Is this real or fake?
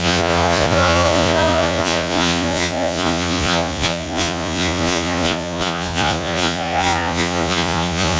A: fake